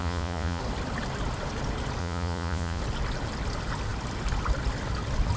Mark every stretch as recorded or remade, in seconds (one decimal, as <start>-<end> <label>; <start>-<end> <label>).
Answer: 0.0-0.6 remade; 0.6-2.0 recorded; 2.0-2.8 remade; 2.8-5.4 recorded